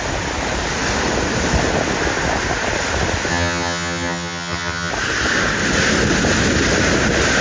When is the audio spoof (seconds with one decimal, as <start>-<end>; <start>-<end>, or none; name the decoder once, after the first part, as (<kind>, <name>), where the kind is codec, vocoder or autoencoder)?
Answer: 3.3-4.9 (vocoder, HiFi-GAN)

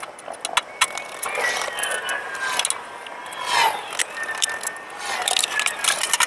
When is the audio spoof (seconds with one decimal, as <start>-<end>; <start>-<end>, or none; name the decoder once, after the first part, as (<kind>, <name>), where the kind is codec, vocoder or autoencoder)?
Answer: none

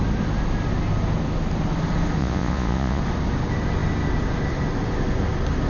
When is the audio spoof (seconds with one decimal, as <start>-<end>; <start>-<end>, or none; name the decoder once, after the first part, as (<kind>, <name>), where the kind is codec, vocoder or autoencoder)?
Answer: 2.2-3.0 (vocoder, Vocos)